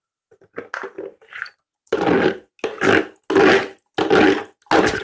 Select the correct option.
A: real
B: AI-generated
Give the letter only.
A